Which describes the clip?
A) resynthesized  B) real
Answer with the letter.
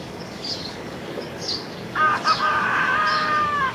A